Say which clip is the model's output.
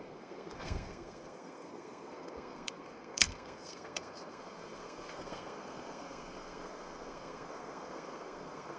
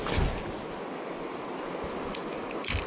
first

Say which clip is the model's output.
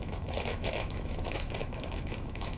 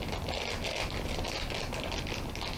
first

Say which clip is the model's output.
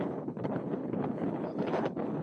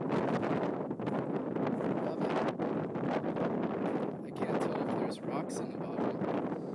first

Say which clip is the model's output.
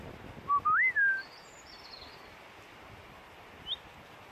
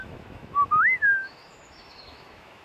second